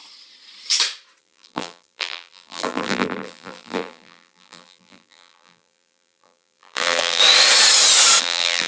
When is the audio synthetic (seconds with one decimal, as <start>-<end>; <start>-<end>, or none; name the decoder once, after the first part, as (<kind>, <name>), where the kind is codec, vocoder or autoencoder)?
1.2-7.2 (vocoder, BigVGAN v2); 8.2-8.7